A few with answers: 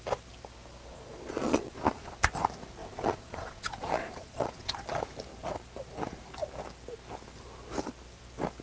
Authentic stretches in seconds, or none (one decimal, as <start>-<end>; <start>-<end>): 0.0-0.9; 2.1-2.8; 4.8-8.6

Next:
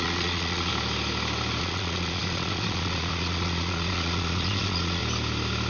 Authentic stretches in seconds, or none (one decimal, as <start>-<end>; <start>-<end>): 0.7-1.6; 5.0-5.7

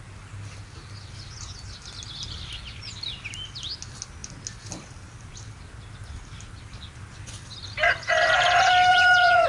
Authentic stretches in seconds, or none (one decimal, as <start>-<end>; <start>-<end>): 0.0-8.9

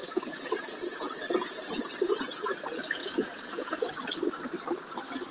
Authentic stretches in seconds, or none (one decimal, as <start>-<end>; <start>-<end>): 1.8-3.0; 3.9-5.3

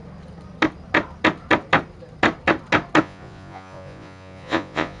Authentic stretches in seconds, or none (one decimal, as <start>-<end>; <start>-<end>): 0.0-3.0